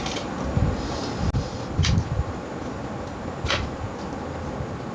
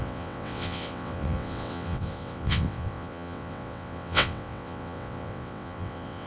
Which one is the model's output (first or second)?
second